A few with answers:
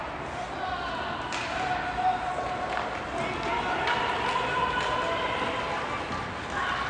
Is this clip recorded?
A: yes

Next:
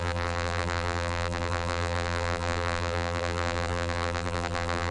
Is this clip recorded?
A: no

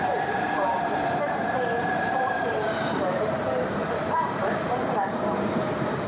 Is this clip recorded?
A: no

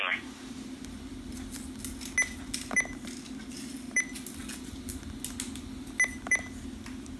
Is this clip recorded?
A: yes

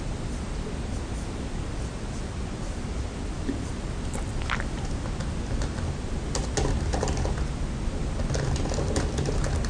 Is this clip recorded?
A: yes